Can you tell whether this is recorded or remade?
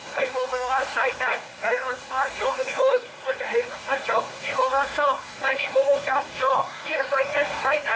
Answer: remade